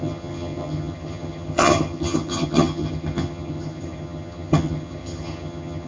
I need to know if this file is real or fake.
fake